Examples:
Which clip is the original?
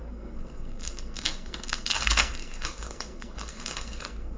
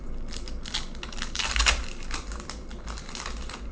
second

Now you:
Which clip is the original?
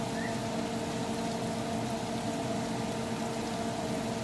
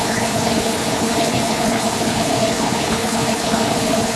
first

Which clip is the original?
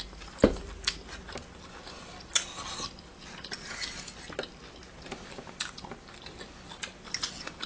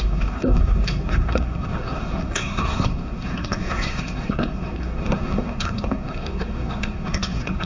first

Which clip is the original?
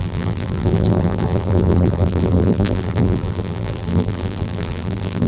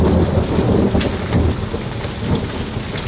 second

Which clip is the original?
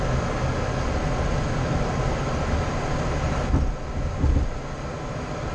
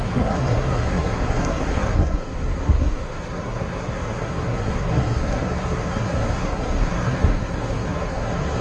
first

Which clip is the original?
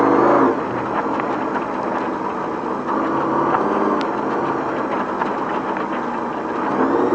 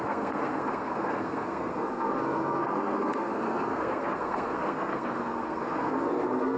first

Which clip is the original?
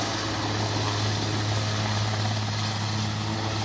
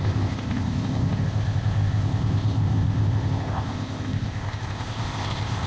first